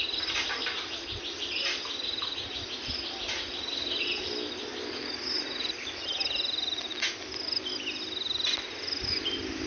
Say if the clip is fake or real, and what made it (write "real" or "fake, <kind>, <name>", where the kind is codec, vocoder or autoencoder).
real